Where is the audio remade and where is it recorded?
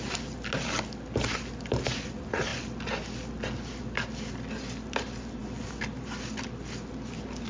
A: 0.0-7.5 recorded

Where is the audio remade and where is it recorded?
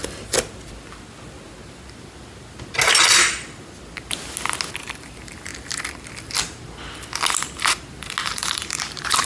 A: 0.0-4.8 recorded; 4.8-5.5 remade; 5.5-8.2 recorded; 8.2-9.3 remade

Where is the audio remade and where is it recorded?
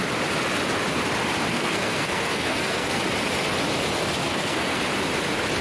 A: 0.0-1.5 recorded; 1.5-3.0 remade; 3.0-4.2 recorded; 4.2-4.8 remade; 4.8-5.6 recorded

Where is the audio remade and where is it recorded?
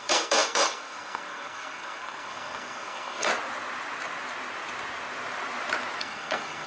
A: 0.0-3.3 remade; 3.3-6.0 recorded; 6.0-6.7 remade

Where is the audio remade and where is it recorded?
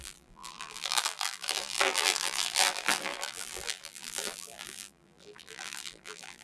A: 0.0-6.4 remade